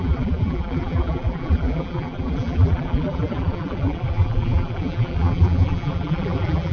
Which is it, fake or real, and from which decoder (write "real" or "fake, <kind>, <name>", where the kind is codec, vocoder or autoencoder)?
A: fake, vocoder, BigVGAN v2